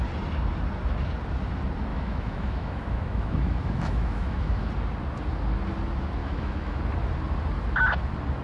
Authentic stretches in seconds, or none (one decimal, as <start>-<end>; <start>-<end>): 0.0-1.9; 4.7-6.2; 6.8-8.4